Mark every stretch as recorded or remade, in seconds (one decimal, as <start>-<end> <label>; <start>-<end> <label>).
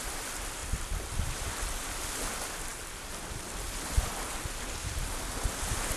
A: 0.0-0.6 recorded; 0.6-2.1 remade; 2.1-6.0 recorded